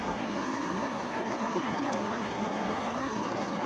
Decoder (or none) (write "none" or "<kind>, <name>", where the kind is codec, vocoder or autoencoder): codec, SNAC